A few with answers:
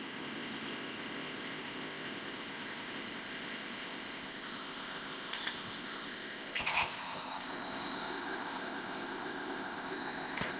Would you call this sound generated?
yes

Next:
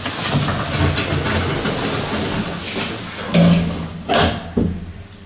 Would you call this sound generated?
no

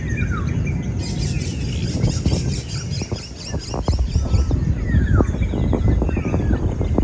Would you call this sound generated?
no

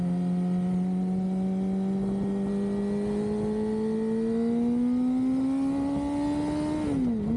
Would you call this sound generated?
no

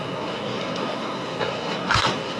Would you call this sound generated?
yes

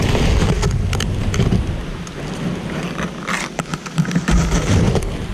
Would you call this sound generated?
no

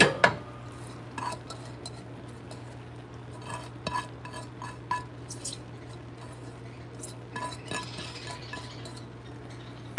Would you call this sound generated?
no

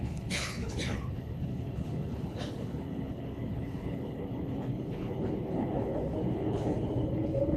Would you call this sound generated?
yes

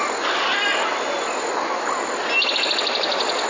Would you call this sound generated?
no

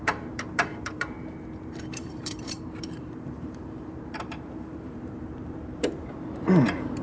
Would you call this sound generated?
yes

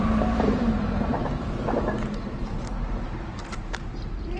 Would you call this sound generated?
yes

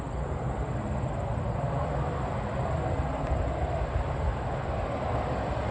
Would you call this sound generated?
no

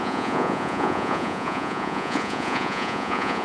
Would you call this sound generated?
yes